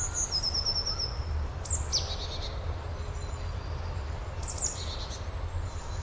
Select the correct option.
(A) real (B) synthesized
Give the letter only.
A